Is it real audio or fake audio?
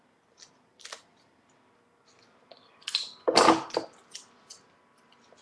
real